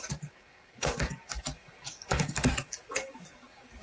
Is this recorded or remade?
remade